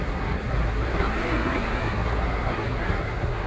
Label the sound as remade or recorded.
remade